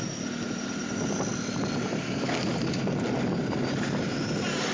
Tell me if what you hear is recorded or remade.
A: recorded